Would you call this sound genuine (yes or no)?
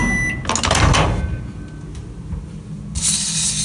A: yes